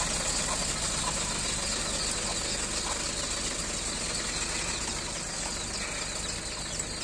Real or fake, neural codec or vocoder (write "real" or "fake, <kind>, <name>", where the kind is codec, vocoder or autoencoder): real